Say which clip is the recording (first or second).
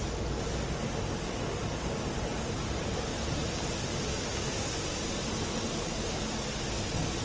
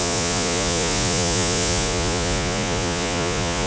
first